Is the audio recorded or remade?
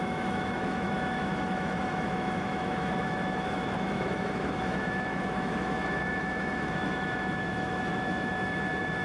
remade